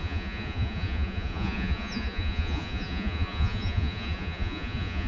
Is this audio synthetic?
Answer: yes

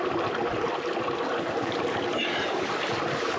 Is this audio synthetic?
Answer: no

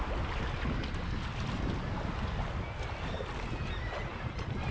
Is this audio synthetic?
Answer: no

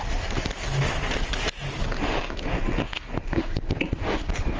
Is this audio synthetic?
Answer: no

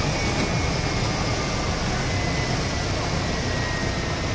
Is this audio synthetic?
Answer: no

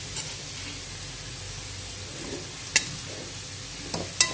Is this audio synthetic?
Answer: no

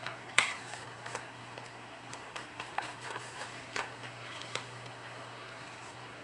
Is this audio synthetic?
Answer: yes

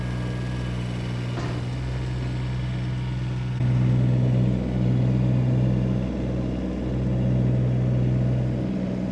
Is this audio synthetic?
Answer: no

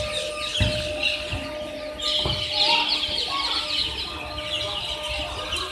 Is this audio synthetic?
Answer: no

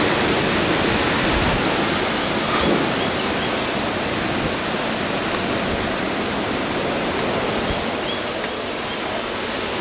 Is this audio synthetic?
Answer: no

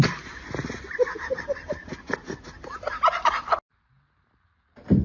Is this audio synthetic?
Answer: no